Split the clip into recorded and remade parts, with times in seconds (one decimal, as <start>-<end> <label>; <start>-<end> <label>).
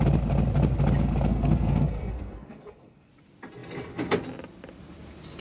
0.0-1.3 recorded; 1.3-3.1 remade; 3.1-5.4 recorded